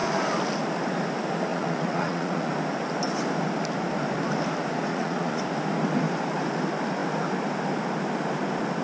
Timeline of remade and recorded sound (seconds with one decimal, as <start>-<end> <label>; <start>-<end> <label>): 0.0-1.5 recorded; 1.5-2.5 remade; 2.5-4.9 recorded; 4.9-5.4 remade; 5.4-8.8 recorded

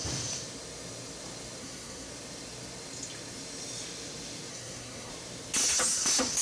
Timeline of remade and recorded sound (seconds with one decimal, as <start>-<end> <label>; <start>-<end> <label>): 0.0-1.6 recorded; 1.6-2.1 remade; 2.1-4.5 recorded; 4.5-5.1 remade; 5.1-6.4 recorded

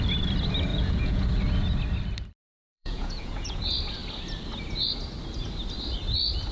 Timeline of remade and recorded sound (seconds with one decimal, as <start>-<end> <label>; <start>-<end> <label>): 0.0-0.7 recorded; 0.7-1.4 remade; 1.4-2.7 recorded; 2.7-3.6 remade; 3.6-6.5 recorded

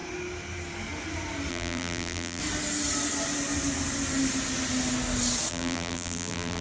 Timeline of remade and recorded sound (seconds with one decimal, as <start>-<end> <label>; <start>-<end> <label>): 0.0-1.5 recorded; 1.5-2.4 remade; 2.4-5.5 recorded; 5.5-6.6 remade

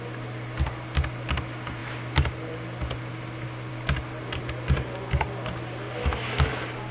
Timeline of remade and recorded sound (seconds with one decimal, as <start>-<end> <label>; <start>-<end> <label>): 0.0-6.0 recorded; 6.0-6.5 remade; 6.5-6.9 recorded